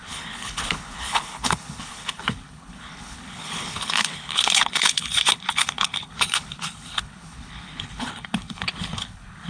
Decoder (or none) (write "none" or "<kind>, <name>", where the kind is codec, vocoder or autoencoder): codec, HILCodec